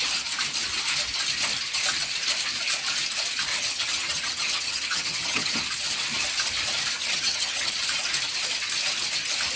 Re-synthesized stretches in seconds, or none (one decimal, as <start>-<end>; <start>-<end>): 3.5-5.5; 7.0-7.7